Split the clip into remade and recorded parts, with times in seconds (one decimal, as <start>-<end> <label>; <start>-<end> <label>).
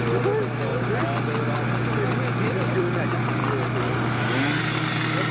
0.0-5.3 recorded